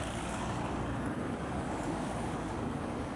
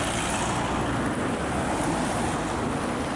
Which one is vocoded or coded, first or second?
first